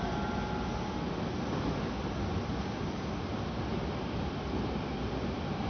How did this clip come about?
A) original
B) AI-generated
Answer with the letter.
A